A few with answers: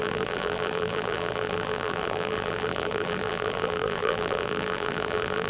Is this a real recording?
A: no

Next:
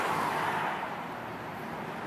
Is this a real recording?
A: yes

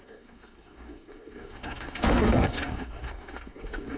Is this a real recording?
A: no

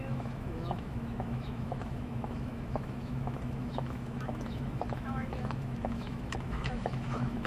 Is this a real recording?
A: no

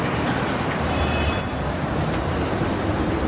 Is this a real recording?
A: yes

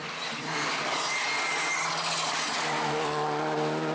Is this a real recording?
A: yes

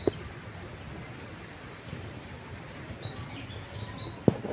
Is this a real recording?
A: yes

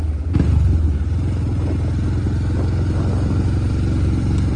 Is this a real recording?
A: yes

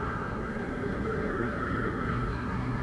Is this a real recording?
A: no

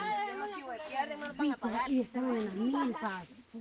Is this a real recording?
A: yes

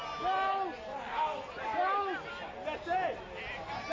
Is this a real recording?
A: yes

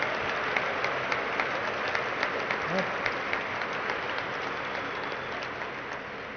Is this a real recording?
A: no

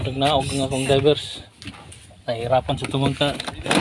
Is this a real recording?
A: yes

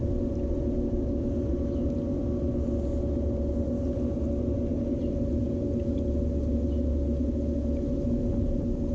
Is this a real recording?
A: yes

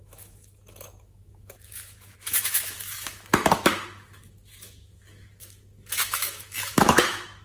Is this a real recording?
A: no